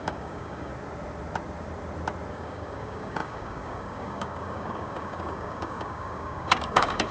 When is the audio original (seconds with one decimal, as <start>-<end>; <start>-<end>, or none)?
0.7-2.3